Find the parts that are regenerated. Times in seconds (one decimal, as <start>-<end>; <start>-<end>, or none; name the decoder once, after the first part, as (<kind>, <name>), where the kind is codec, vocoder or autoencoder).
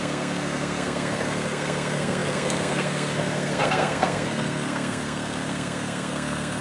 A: 0.0-6.6 (codec, SNAC)